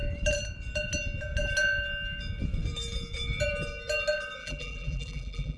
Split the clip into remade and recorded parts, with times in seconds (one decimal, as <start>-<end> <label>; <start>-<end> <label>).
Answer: 0.0-4.4 recorded; 4.4-5.6 remade